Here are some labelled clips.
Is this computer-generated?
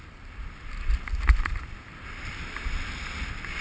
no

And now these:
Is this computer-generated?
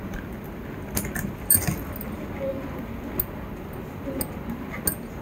no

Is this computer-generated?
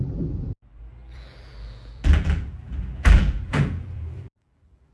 yes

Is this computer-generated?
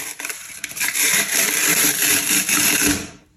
yes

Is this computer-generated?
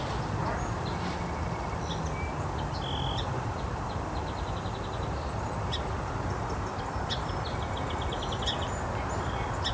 no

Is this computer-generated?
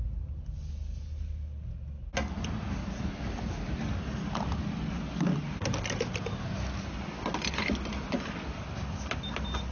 no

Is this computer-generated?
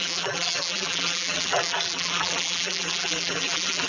yes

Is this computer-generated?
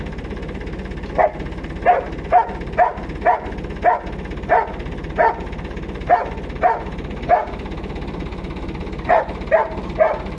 no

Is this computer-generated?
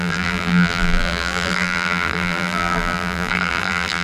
yes